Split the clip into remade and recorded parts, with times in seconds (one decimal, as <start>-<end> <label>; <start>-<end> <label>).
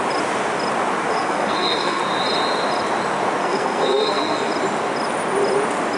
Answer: 0.0-1.1 recorded; 1.1-2.0 remade; 2.0-3.4 recorded; 3.4-4.5 remade; 4.5-6.0 recorded